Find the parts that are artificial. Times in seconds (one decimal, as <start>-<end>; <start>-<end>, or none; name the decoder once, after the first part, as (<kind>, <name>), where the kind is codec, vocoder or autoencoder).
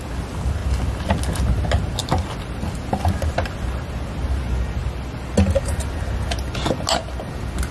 none